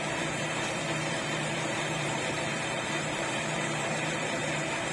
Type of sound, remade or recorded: remade